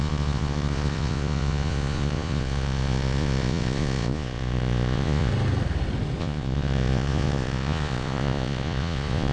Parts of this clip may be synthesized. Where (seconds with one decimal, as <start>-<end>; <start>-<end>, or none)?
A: 0.0-5.3; 6.2-9.3